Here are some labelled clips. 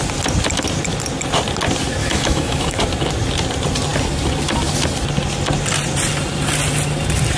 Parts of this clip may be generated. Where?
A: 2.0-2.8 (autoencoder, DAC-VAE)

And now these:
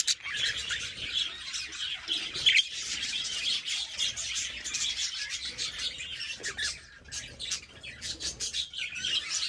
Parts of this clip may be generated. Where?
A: none

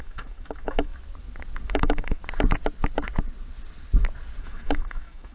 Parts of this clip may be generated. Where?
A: 0.0-0.9 (autoencoder, DAC-VAE); 1.7-2.2; 4.4-5.3

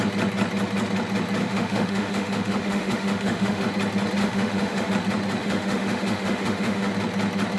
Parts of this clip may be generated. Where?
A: 1.4-3.6 (autoencoder, DAC-VAE); 4.2-4.9; 5.4-6.9

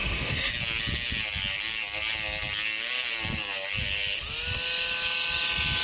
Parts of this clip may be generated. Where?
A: 0.0-0.5 (autoencoder, DAC-VAE)

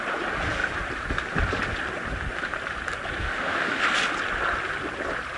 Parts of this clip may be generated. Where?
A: 3.2-3.8 (autoencoder, DAC-VAE)

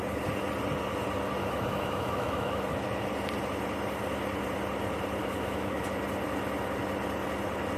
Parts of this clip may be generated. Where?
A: 1.4-2.6 (autoencoder, DAC-VAE); 5.2-5.8